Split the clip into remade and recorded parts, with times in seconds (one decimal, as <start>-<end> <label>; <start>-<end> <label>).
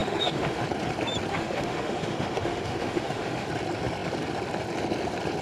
0.0-0.6 remade; 0.6-1.3 recorded; 1.3-3.5 remade; 3.5-5.4 recorded